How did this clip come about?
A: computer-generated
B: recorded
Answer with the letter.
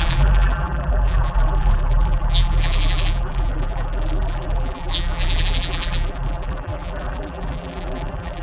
A